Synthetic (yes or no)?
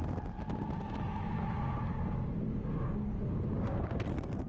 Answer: no